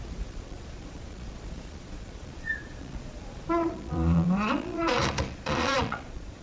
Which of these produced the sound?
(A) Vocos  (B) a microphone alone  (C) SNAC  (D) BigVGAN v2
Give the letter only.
A